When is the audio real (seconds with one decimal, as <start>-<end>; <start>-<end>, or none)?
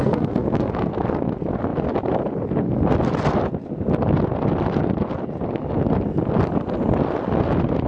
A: 0.9-7.9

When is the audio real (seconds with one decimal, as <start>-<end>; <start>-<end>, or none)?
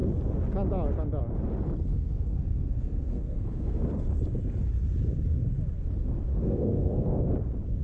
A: 0.0-1.9; 3.8-6.3; 7.2-7.8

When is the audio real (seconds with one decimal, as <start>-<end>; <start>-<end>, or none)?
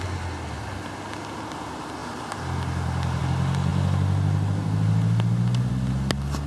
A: 0.0-6.5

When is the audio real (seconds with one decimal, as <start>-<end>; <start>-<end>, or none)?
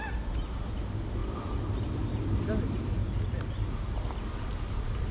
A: 0.0-5.1